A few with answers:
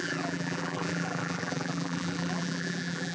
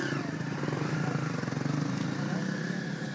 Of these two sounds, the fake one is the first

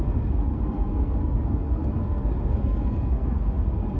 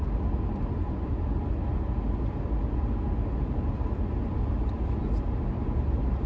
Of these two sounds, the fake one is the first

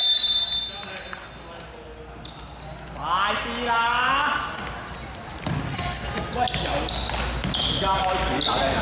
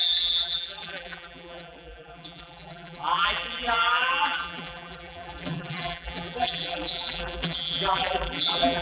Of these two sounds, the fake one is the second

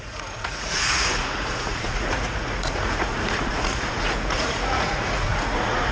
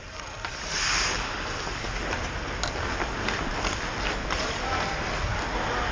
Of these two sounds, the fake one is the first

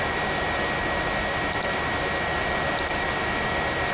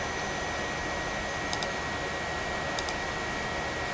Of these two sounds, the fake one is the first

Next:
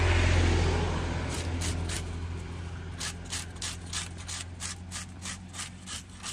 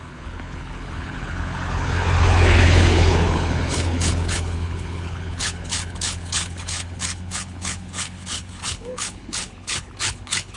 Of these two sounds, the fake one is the second